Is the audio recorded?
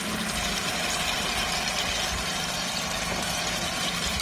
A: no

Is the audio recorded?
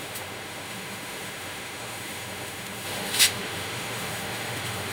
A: no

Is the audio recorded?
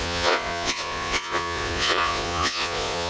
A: no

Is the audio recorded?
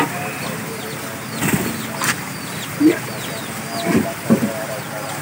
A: yes